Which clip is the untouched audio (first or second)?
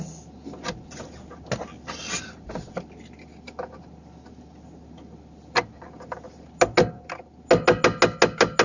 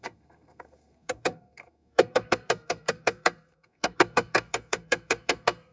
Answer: first